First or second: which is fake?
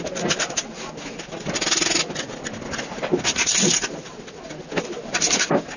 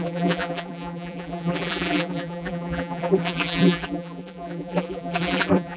second